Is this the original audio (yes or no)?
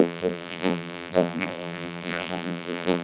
no